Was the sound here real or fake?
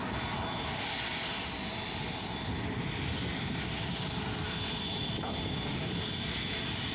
real